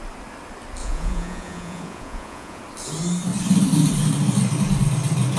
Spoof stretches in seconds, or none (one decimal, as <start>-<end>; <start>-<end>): 0.8-2.6